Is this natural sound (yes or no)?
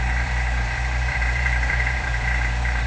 no